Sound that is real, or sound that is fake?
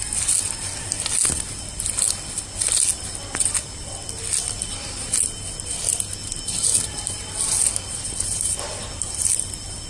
real